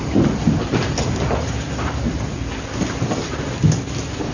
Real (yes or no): yes